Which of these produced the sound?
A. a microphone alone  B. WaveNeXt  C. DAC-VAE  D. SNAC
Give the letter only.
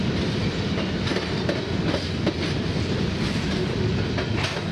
A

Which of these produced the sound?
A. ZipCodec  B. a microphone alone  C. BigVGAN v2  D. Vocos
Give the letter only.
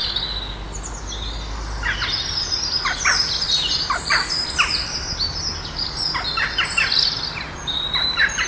B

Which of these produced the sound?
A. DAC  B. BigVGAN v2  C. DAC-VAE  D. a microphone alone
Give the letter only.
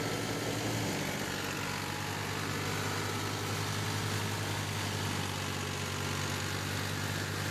D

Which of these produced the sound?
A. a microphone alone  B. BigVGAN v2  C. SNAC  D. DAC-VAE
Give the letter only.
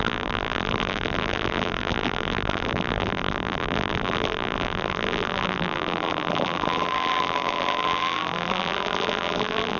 B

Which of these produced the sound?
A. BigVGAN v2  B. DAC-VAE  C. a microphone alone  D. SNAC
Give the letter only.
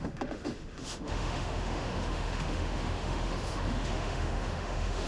B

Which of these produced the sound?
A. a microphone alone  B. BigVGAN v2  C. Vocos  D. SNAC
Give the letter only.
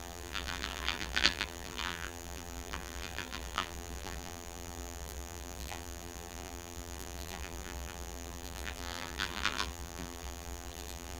B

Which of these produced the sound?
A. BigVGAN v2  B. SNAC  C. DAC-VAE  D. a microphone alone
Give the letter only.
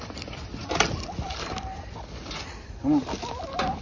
D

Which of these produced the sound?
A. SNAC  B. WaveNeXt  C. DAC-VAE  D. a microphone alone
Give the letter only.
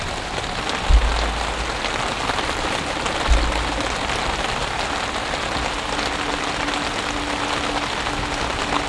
D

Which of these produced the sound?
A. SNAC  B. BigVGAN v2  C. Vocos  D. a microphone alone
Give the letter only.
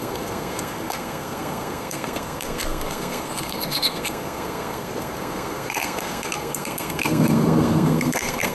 A